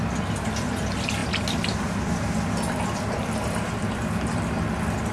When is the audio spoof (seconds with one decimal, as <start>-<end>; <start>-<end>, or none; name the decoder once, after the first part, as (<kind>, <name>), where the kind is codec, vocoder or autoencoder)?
none